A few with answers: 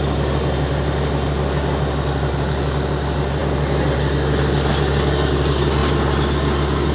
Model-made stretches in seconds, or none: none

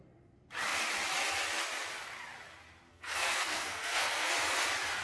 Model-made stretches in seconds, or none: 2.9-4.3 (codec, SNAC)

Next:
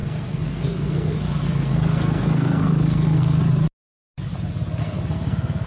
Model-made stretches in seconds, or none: 0.0-3.4 (codec, SNAC); 4.8-5.7